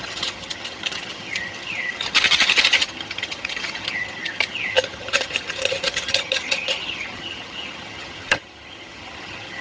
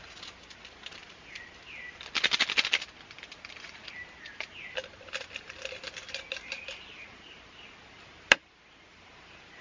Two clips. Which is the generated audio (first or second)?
first